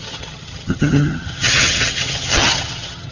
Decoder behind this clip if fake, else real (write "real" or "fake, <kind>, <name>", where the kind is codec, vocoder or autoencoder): fake, vocoder, HiFi-GAN